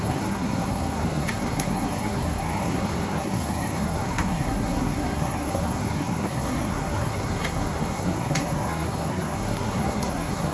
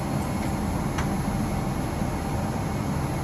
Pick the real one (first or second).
second